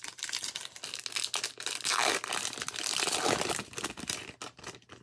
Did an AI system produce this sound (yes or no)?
no